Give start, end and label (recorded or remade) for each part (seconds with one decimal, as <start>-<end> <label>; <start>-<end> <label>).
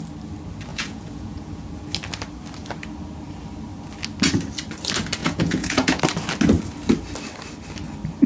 0.0-0.7 recorded; 0.7-1.7 remade; 1.7-5.2 recorded; 5.2-6.0 remade; 6.0-8.3 recorded